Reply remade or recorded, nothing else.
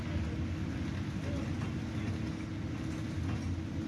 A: recorded